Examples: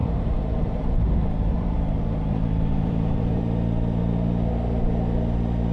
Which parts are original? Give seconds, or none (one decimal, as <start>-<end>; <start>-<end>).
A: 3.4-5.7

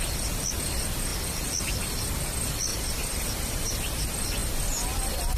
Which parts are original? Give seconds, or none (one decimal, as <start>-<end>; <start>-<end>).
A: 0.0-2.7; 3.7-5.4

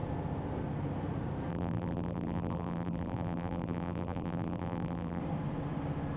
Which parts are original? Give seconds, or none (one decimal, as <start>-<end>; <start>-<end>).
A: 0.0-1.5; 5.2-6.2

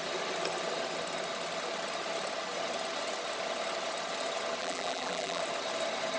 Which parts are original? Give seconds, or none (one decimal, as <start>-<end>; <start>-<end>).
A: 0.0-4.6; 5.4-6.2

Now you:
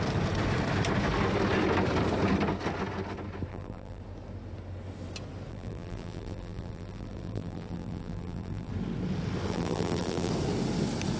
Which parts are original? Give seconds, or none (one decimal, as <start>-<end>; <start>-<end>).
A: 0.0-3.5; 4.0-5.5; 8.7-9.5; 10.3-11.2